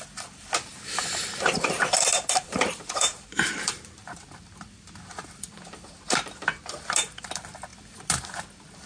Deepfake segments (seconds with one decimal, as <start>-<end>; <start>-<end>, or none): 0.7-4.2

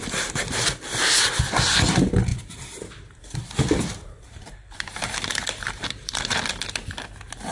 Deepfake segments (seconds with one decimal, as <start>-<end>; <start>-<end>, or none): 2.3-6.4

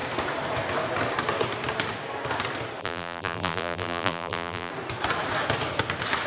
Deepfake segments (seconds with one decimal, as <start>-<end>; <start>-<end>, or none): 2.8-4.7

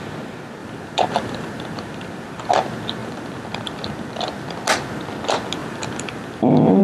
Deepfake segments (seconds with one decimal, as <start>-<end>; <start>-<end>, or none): 0.6-2.5; 3.0-4.3; 5.6-6.8

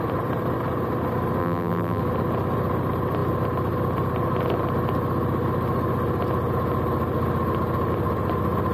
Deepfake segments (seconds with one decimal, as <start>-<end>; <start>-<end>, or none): 1.4-2.0

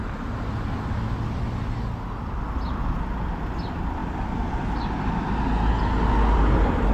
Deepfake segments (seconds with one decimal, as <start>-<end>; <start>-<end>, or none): none